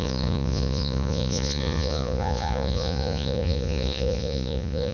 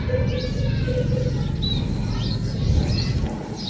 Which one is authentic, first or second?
second